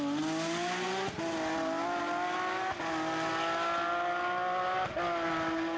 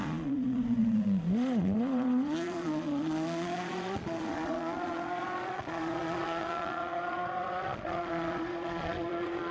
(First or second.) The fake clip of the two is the second